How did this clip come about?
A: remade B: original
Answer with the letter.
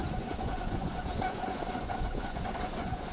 A